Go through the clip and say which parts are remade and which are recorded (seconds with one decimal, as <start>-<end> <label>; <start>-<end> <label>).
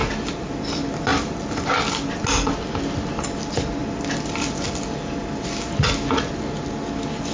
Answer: 0.0-0.6 remade; 0.6-3.8 recorded; 3.8-5.9 remade; 5.9-7.3 recorded